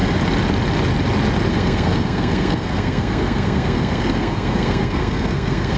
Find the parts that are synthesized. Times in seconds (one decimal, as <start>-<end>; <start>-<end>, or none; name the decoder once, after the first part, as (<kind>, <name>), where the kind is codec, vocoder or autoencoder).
1.5-5.8 (codec, SNAC)